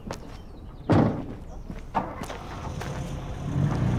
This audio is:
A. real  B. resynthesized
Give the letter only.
A